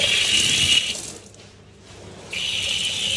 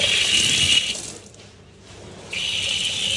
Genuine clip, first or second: first